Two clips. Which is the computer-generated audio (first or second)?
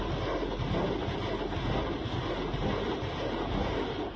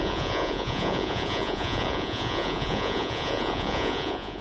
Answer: second